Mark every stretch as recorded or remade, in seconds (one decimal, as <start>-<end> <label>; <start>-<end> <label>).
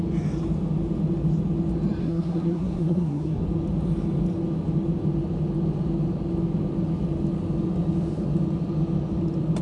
0.0-2.0 recorded; 2.0-3.4 remade; 3.4-9.6 recorded